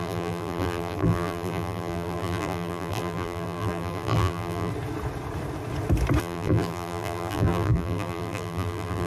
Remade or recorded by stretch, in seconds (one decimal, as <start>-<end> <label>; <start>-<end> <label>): 0.0-4.7 remade; 4.7-6.2 recorded; 6.2-9.1 remade